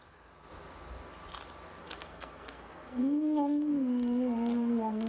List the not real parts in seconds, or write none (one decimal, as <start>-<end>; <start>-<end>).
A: 1.8-5.1